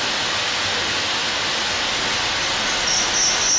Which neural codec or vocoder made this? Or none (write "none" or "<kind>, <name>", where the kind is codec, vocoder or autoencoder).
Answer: none